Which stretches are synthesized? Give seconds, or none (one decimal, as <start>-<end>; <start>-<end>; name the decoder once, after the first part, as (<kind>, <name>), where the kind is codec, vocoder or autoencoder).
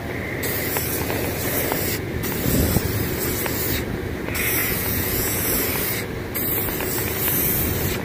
4.6-5.4 (vocoder, Vocos)